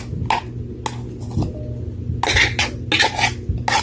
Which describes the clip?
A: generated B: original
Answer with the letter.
B